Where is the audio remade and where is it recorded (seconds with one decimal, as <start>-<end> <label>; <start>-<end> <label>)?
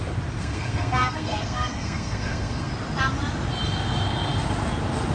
0.0-0.4 recorded; 0.4-2.7 remade; 2.7-5.1 recorded